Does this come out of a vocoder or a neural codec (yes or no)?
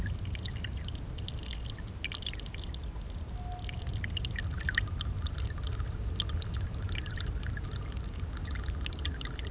no